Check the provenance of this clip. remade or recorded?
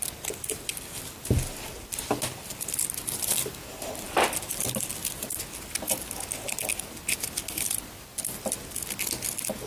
recorded